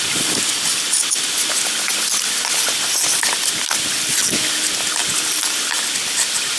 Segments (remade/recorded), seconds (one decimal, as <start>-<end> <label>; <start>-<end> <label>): 0.0-6.6 recorded